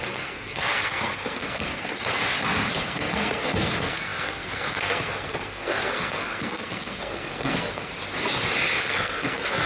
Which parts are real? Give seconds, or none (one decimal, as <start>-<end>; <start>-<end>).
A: 2.2-2.8; 7.9-8.8